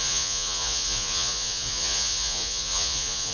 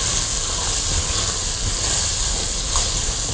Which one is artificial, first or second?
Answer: first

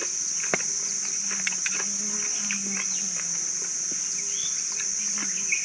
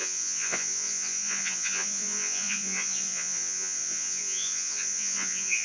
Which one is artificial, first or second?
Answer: second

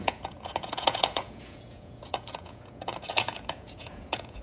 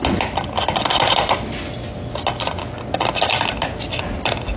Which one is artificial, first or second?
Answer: first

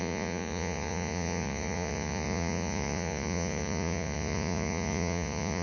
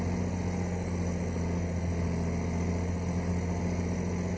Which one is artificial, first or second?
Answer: first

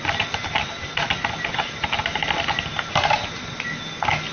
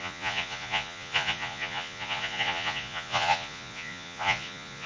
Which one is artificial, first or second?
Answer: second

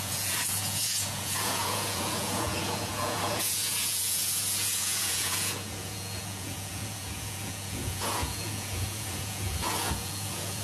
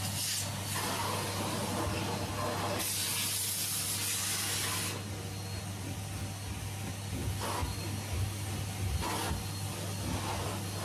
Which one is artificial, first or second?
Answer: first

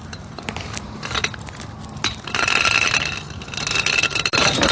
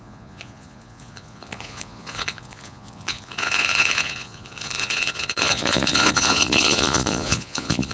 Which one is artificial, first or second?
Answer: second